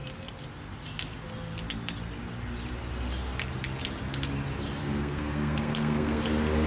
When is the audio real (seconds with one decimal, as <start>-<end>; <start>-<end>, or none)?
0.0-4.8; 6.2-6.7